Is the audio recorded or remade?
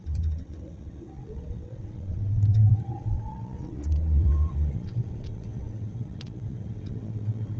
remade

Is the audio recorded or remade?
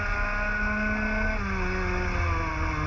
recorded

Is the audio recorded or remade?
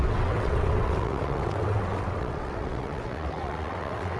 remade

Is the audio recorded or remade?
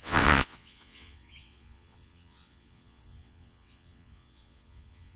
remade